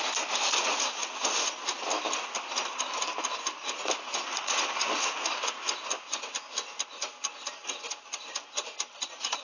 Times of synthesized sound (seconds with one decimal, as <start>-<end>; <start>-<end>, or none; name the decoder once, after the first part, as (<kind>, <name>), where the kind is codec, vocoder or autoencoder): 0.9-1.5 (vocoder, Vocos); 4.1-5.5